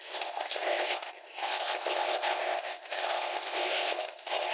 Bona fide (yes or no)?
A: no